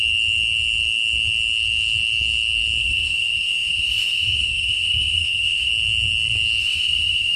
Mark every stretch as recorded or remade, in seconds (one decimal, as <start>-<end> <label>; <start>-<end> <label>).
0.0-2.8 recorded; 2.8-5.7 remade; 5.7-6.6 recorded; 6.6-7.4 remade